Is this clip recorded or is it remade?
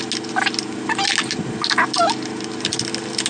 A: recorded